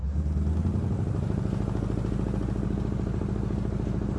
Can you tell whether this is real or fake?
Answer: real